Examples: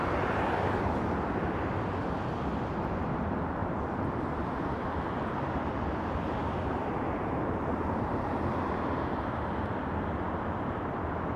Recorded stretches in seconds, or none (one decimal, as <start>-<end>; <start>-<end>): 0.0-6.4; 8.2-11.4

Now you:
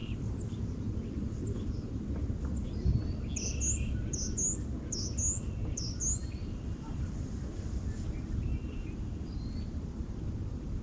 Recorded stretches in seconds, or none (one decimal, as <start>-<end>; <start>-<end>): 2.3-6.2

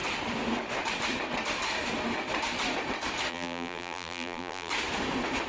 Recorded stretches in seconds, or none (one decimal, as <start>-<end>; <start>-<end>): 0.0-3.3; 4.7-5.5

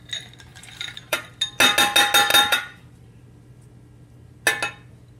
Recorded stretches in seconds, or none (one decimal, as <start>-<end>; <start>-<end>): 0.0-0.5; 1.4-2.3; 3.2-5.2